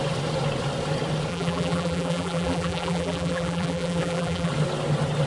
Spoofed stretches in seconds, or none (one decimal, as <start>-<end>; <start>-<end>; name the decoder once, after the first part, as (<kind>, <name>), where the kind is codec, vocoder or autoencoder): 1.3-4.5 (vocoder, BigVGAN v2)